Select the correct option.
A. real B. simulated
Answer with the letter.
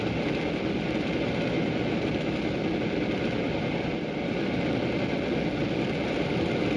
B